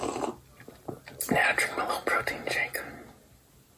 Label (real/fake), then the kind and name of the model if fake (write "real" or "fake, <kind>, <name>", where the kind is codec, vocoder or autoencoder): real